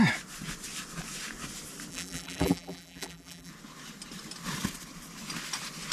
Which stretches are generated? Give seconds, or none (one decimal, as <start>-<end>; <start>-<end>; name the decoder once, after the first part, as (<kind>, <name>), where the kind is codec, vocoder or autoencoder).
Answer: 1.9-3.5 (vocoder, BigVGAN v2)